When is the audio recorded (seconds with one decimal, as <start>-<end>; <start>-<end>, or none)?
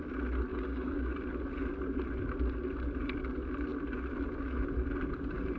0.0-0.5; 1.1-5.6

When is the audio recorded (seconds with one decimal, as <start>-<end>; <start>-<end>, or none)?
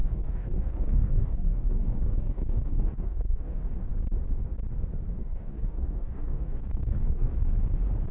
3.9-5.2; 7.3-8.1